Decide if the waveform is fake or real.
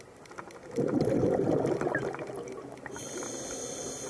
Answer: real